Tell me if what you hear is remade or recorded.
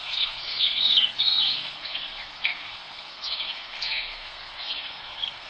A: remade